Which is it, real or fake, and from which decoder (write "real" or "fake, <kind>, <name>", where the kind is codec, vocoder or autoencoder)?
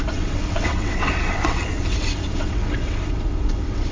fake, vocoder, WaveNeXt